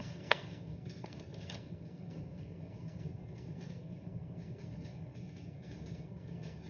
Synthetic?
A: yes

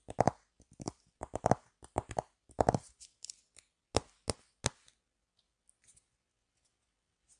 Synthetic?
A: no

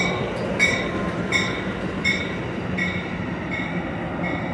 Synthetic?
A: no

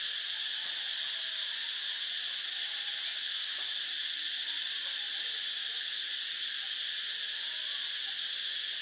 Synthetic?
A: no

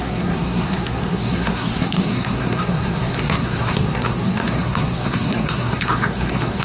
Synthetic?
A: yes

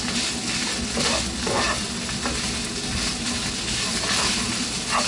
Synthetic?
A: no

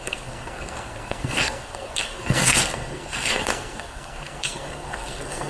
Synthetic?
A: yes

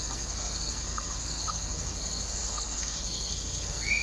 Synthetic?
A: yes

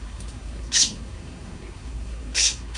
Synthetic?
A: yes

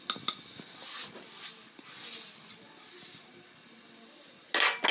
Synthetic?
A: no